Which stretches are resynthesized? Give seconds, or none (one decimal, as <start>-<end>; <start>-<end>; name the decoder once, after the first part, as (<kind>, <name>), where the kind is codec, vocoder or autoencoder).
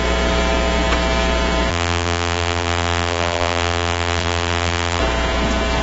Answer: 1.7-5.0 (vocoder, BigVGAN v2)